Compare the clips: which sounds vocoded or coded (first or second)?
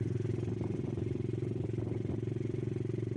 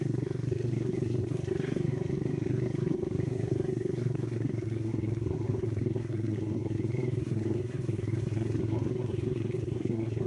second